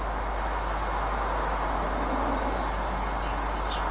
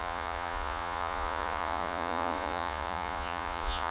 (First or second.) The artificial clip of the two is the second